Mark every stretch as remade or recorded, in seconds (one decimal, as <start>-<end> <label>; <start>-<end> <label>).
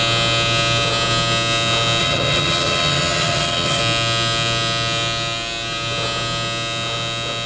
0.0-2.0 recorded; 2.0-3.8 remade; 3.8-7.5 recorded